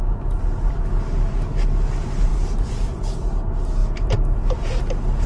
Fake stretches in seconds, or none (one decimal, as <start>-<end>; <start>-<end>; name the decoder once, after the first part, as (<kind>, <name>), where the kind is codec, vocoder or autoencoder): 2.3-3.2 (vocoder, BigVGAN v2)